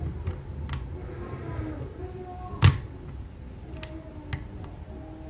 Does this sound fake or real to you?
real